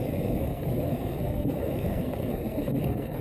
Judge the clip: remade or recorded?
remade